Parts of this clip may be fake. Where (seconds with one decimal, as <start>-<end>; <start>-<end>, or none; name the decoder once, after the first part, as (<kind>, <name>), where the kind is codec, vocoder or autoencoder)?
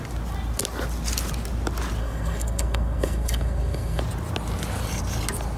2.0-4.0 (codec, SNAC)